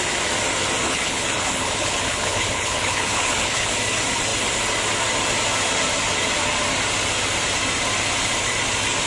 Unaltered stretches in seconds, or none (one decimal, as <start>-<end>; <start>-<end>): 0.0-0.8; 3.7-9.1